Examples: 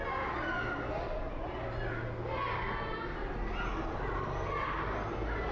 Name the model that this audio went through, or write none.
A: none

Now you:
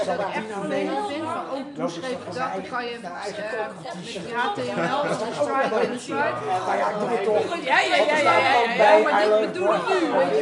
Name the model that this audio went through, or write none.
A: none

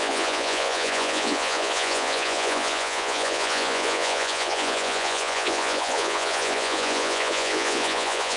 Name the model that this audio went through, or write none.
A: vocoder, Vocos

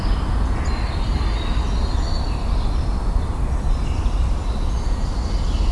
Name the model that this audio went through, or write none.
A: none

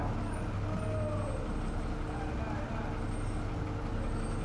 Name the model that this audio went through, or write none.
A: none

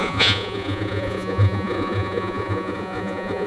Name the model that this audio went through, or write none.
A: vocoder, Vocos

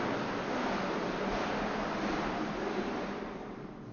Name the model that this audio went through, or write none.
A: none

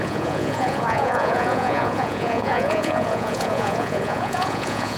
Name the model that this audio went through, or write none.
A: vocoder, Vocos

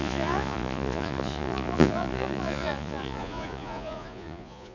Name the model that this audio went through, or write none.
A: vocoder, Vocos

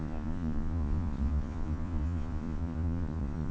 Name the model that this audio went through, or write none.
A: vocoder, Vocos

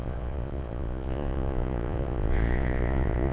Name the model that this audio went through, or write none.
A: vocoder, Vocos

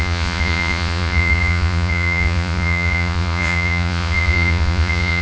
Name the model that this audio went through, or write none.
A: vocoder, Vocos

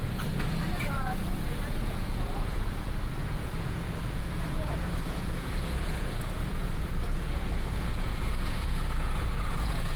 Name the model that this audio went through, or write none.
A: vocoder, Vocos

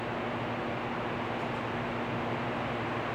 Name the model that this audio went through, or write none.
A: none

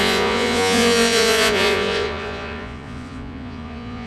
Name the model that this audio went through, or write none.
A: vocoder, Vocos